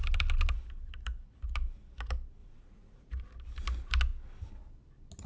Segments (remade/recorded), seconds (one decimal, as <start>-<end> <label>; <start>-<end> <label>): 0.0-2.4 recorded; 2.4-3.3 remade; 3.3-5.3 recorded

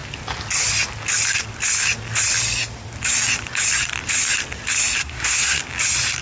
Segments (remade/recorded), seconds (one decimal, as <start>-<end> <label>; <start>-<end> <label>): 0.0-5.0 recorded; 5.0-5.6 remade; 5.6-6.2 recorded

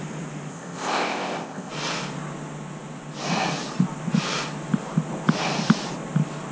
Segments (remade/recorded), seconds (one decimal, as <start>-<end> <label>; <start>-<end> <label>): 0.0-0.5 recorded; 0.5-1.7 remade; 1.7-6.5 recorded